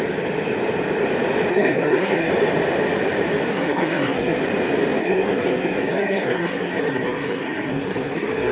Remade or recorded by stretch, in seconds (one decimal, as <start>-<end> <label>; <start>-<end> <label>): 0.0-1.5 recorded; 1.5-2.3 remade; 2.3-3.5 recorded; 3.5-4.4 remade; 4.4-5.0 recorded; 5.0-8.5 remade